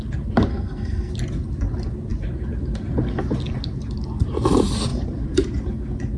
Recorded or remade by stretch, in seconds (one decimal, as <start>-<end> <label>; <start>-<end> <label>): 0.0-0.5 recorded; 0.5-1.1 remade; 1.1-6.2 recorded